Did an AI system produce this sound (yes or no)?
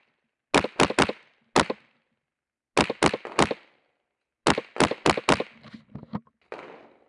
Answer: no